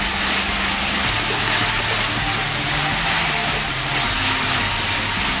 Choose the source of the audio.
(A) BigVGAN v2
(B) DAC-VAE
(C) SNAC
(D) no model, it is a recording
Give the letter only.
D